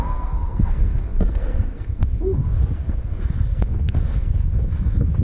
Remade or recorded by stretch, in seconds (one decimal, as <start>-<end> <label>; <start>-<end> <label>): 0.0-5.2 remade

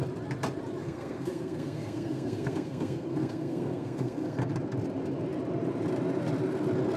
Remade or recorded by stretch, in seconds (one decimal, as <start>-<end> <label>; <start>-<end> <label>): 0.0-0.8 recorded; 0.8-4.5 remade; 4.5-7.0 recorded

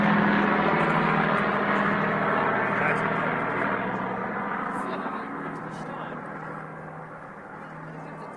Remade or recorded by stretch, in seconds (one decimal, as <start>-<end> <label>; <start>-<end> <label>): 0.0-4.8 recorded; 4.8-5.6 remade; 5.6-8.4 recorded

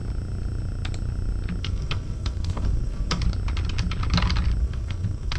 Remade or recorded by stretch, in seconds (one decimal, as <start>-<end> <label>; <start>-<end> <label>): 0.0-1.6 recorded; 1.6-3.2 remade; 3.2-4.6 recorded; 4.6-5.4 remade